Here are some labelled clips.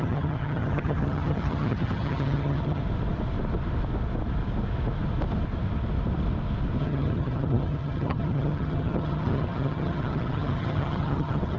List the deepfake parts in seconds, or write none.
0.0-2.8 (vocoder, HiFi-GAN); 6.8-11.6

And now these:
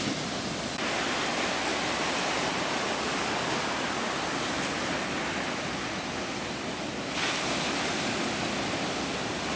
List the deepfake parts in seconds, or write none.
none

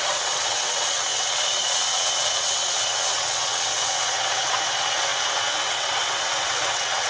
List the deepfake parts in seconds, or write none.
0.0-7.1 (vocoder, WaveNeXt)

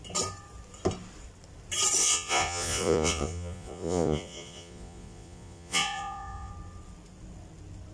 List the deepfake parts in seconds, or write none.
2.0-6.5 (vocoder, Vocos)

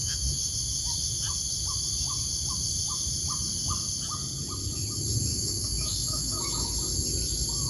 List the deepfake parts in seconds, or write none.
0.0-0.5 (autoencoder, DAC-VAE); 5.3-6.7